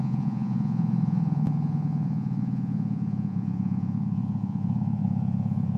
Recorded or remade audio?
remade